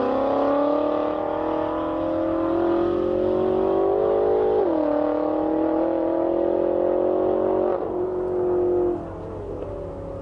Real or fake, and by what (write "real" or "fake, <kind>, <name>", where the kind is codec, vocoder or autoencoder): real